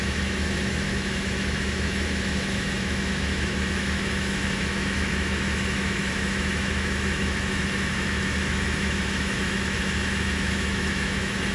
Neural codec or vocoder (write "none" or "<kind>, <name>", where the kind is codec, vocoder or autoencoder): autoencoder, DAC-VAE